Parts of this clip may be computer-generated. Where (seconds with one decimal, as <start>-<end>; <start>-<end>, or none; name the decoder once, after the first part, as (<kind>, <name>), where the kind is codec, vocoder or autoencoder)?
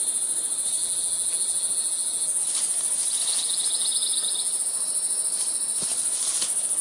0.8-2.4 (vocoder, BigVGAN v2); 3.3-4.6